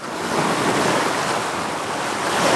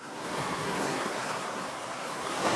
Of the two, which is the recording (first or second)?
first